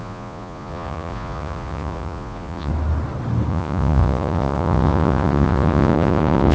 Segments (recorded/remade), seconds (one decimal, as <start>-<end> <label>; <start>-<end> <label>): 0.0-2.7 remade; 2.7-3.5 recorded; 3.5-6.5 remade